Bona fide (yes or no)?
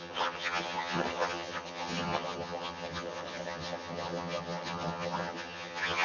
no